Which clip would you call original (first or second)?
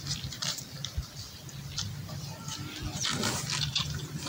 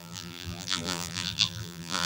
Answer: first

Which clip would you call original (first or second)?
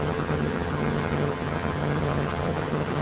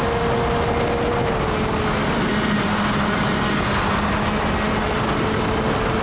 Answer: second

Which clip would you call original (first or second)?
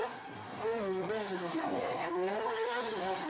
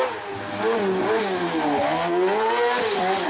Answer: second